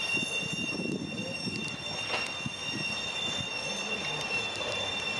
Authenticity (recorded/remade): recorded